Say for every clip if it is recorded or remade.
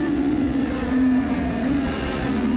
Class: remade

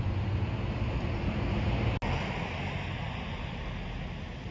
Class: recorded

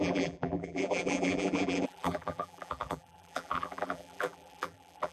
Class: remade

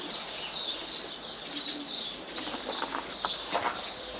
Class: recorded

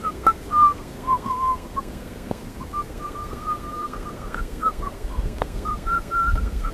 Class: remade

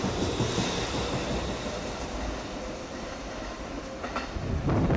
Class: recorded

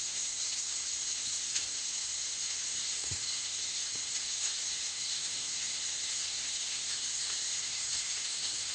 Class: remade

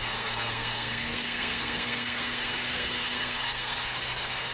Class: remade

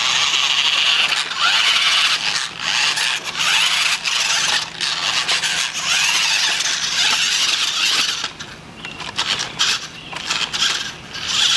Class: recorded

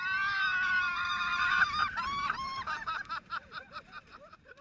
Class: remade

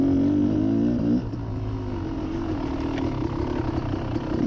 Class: recorded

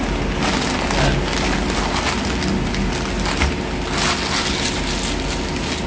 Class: recorded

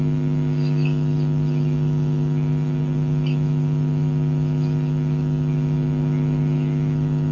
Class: recorded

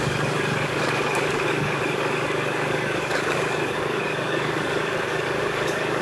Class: remade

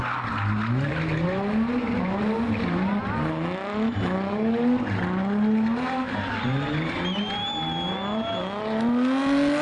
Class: recorded